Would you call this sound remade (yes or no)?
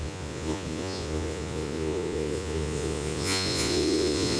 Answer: yes